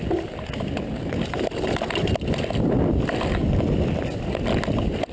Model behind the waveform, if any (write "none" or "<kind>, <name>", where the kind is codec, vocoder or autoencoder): none